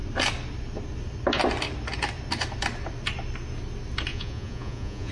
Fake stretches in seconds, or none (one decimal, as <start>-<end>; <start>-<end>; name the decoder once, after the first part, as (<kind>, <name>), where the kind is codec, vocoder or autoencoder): 4.1-5.1 (vocoder, Vocos)